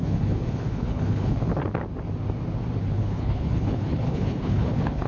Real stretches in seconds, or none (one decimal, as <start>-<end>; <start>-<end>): 1.5-2.8